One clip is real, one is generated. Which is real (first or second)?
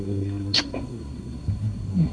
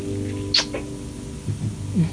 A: second